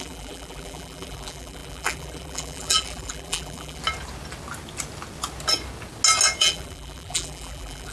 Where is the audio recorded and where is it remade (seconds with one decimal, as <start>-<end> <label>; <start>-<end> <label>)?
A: 0.0-3.8 remade; 3.8-6.4 recorded; 6.4-7.9 remade

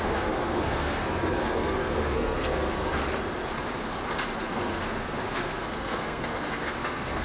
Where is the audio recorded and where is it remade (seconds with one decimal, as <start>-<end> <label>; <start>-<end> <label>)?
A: 0.0-3.0 remade; 3.0-4.4 recorded; 4.4-7.2 remade

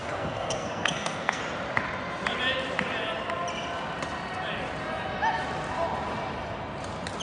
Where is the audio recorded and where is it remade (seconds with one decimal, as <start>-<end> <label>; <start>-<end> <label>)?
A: 0.0-1.4 remade; 1.4-7.2 recorded

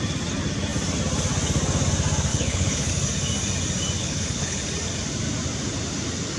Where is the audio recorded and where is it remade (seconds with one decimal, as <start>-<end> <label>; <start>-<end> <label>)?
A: 0.0-2.3 recorded; 2.3-2.9 remade; 2.9-4.0 recorded; 4.0-4.6 remade; 4.6-6.4 recorded